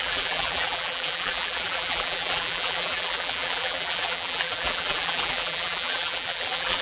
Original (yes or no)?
no